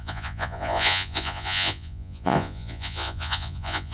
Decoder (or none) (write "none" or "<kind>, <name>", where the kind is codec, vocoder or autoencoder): vocoder, Vocos